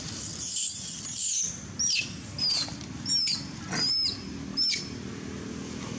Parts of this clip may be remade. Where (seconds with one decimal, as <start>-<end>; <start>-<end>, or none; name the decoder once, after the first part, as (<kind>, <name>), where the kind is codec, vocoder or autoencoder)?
none